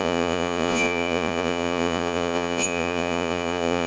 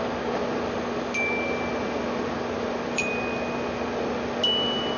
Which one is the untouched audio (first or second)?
second